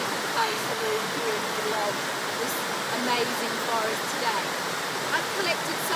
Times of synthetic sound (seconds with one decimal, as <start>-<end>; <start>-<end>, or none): 0.4-1.1